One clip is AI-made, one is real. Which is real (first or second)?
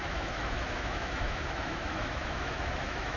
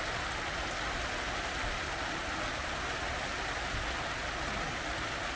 second